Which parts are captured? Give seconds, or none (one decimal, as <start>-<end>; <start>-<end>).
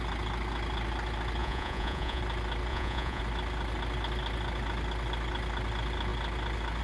0.0-1.4; 2.2-2.7; 3.2-6.8